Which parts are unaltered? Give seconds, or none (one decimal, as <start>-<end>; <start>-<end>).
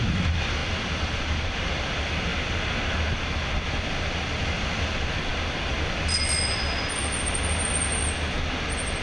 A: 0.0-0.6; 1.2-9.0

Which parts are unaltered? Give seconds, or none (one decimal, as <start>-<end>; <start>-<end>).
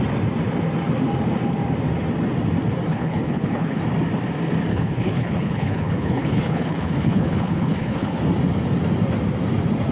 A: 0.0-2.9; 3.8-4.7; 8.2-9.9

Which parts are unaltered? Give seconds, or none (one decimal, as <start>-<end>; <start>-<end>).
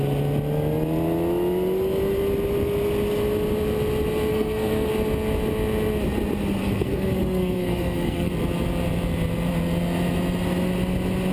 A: 0.0-4.3; 4.9-6.6; 8.3-11.3